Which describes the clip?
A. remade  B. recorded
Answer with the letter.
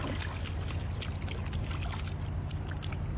B